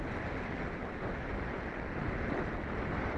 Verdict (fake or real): real